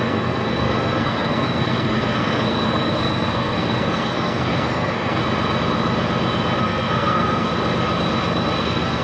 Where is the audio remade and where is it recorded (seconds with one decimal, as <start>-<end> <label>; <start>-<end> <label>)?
0.0-5.2 remade; 5.2-6.6 recorded; 6.6-7.5 remade; 7.5-8.6 recorded; 8.6-9.0 remade